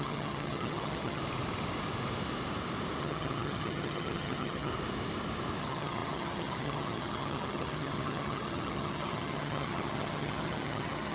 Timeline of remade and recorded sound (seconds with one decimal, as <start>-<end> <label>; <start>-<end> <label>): 0.0-1.2 remade; 1.2-3.0 recorded; 3.0-4.7 remade; 4.7-5.6 recorded; 5.6-11.1 remade